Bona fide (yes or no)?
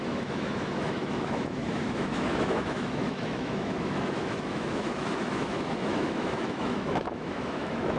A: no